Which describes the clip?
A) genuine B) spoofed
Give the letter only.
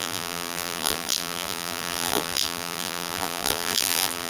B